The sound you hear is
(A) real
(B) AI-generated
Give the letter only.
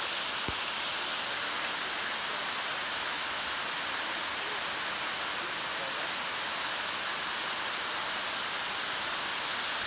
A